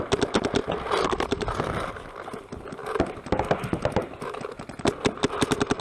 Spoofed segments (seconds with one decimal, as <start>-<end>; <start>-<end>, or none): 0.6-1.6

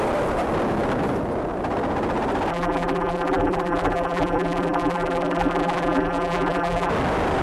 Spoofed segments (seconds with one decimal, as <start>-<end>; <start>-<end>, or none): 2.5-6.9